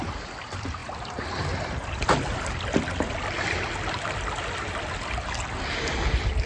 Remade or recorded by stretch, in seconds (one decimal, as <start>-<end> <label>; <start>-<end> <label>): 0.0-6.5 recorded